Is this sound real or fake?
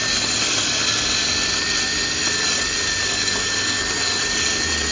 real